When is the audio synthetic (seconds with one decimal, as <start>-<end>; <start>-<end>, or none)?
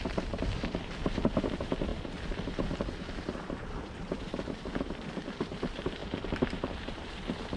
0.0-7.6